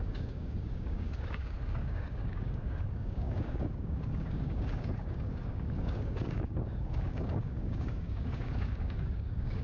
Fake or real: fake